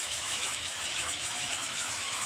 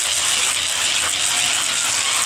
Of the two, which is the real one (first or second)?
second